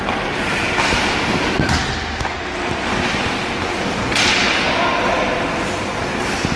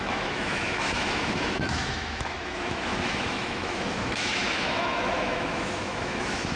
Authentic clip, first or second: first